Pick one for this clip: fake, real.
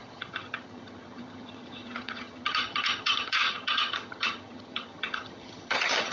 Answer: fake